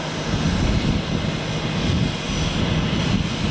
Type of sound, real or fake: real